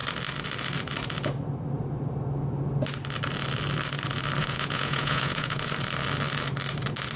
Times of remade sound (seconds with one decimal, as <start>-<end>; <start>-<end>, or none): 4.4-5.7